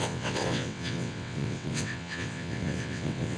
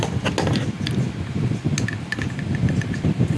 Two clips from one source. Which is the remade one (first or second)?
first